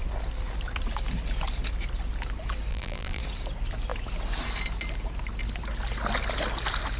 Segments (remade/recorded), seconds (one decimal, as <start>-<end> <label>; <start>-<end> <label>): 0.0-2.7 recorded; 2.7-3.2 remade; 3.2-7.0 recorded